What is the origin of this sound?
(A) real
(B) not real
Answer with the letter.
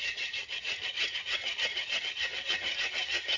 B